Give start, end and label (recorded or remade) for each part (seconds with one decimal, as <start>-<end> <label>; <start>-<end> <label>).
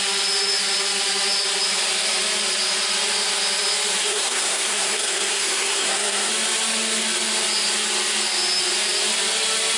0.0-4.0 recorded; 4.0-6.3 remade; 6.3-9.8 recorded